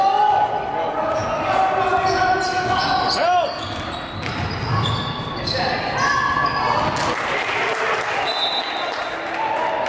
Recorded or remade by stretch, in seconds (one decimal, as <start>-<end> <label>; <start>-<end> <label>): 0.0-9.9 recorded